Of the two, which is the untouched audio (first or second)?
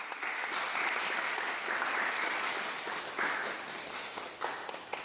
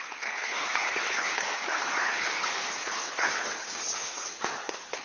first